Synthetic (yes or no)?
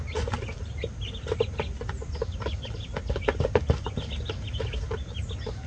no